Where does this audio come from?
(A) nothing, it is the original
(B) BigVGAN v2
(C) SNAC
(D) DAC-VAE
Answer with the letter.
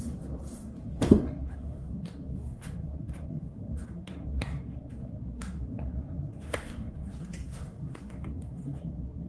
C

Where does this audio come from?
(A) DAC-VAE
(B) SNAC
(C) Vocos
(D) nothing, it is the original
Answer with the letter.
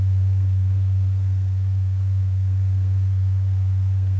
B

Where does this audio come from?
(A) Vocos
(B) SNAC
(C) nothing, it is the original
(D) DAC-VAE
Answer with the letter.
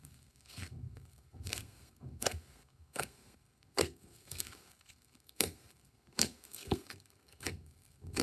B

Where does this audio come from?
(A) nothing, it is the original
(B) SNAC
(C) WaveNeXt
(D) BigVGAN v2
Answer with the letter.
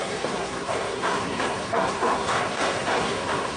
B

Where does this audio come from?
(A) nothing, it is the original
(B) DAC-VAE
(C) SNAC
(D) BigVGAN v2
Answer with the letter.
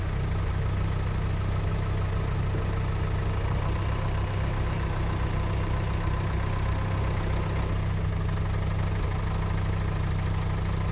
A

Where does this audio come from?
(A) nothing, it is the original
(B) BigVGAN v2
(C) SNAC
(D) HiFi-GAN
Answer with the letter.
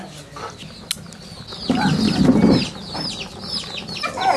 A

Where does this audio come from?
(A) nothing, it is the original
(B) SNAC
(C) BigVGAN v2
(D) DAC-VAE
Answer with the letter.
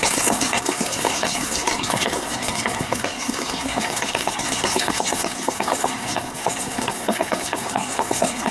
B